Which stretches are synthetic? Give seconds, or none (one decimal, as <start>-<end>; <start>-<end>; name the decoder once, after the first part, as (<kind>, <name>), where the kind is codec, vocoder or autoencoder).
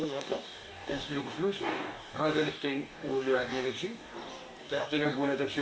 0.0-4.1 (codec, DAC); 4.6-5.6